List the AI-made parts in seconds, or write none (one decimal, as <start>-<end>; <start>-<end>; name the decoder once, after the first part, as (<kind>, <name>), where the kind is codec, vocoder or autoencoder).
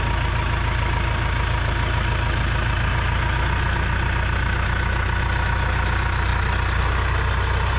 none